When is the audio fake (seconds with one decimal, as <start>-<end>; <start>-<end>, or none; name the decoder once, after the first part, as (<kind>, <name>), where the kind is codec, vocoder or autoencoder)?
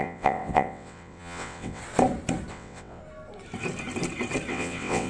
0.0-1.8 (vocoder, WaveNeXt); 2.5-3.0; 4.5-5.1